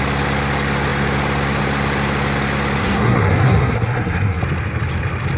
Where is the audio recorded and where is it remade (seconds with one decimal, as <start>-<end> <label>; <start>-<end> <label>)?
0.0-2.8 recorded; 2.8-4.4 remade; 4.4-5.4 recorded